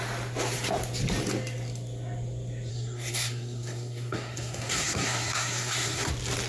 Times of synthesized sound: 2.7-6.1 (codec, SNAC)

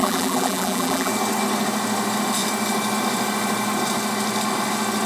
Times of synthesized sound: 0.0-1.1 (vocoder, BigVGAN v2)

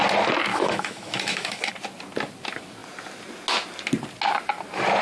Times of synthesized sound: 0.5-1.7 (autoencoder, DAC-VAE)

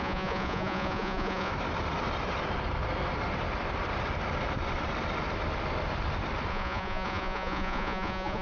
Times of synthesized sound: 0.0-1.5 (vocoder, Vocos); 6.5-8.4